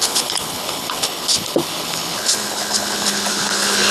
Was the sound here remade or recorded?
remade